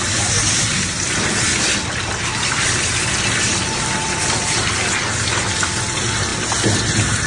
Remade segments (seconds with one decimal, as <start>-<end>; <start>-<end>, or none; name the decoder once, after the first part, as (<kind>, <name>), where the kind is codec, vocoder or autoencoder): none